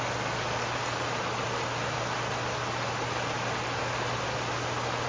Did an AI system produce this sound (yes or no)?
no